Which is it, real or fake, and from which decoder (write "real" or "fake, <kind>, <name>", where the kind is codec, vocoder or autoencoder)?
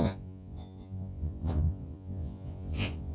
fake, vocoder, Vocos